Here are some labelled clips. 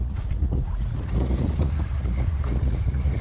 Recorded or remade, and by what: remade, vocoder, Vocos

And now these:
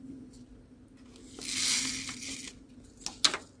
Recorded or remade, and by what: recorded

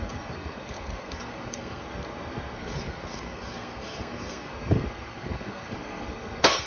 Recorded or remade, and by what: remade, codec, SNAC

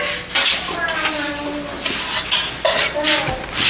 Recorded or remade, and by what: recorded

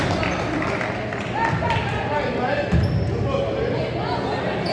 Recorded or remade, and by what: recorded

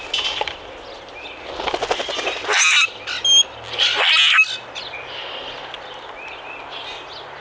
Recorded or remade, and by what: recorded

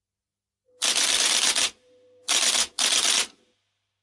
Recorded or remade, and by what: recorded